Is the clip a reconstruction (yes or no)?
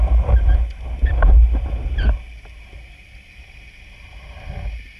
no